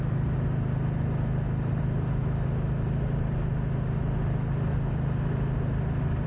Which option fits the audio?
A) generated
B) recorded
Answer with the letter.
B